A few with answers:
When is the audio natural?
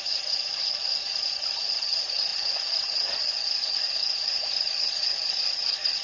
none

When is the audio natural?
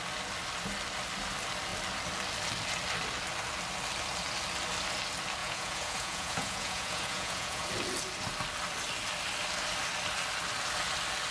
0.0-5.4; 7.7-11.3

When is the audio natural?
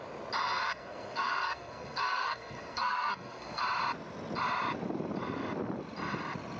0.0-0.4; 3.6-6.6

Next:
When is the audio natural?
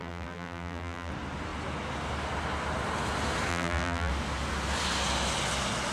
1.1-3.5; 4.1-5.9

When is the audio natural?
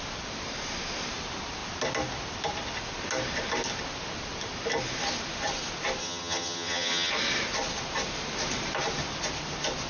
0.0-6.0; 7.1-9.9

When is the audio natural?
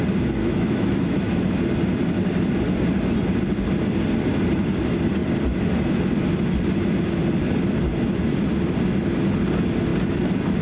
0.0-0.4; 1.4-10.6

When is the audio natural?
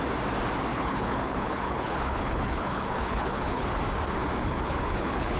0.0-0.7; 3.8-4.4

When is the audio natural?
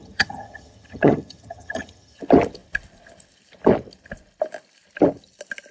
2.2-5.7